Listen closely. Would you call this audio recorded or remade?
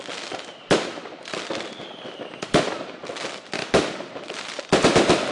remade